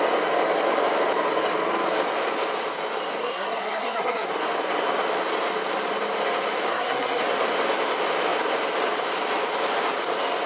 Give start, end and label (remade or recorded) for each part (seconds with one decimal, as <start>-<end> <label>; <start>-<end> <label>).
0.0-3.2 recorded; 3.2-4.3 remade; 4.3-6.7 recorded; 6.7-7.2 remade; 7.2-10.5 recorded